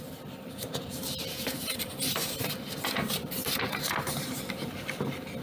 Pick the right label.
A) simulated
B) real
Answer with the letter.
A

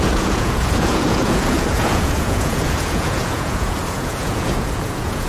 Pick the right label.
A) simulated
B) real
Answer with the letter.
A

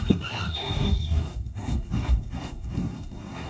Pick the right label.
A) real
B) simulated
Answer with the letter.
B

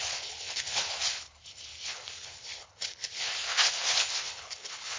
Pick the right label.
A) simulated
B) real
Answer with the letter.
A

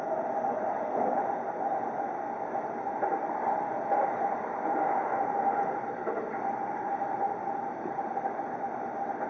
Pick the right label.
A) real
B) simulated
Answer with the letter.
B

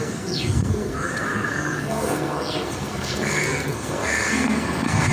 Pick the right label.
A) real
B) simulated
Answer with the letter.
B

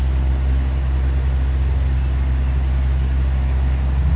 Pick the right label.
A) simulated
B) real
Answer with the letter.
B